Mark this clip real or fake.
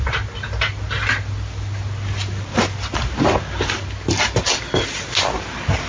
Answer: real